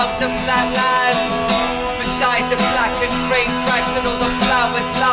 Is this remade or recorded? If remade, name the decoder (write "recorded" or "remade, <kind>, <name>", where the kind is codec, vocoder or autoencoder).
recorded